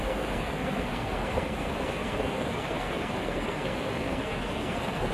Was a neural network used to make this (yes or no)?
yes